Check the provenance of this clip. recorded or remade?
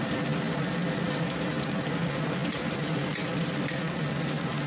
recorded